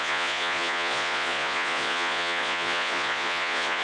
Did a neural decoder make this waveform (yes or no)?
yes